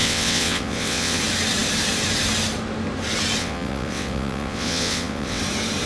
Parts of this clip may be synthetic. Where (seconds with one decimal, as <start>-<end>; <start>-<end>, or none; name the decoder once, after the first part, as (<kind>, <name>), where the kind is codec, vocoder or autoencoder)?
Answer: 0.0-1.2 (vocoder, WaveNeXt); 3.4-5.4